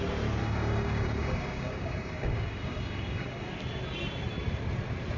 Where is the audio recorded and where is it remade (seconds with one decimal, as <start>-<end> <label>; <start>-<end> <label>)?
0.0-0.4 recorded; 0.4-3.5 remade; 3.5-5.2 recorded